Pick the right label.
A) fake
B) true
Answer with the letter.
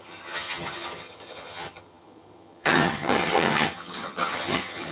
A